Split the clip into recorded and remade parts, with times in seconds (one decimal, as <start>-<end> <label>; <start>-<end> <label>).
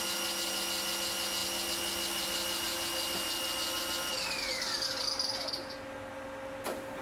0.0-7.0 recorded